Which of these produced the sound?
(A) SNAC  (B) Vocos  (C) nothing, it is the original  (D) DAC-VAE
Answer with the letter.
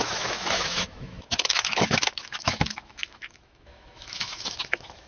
D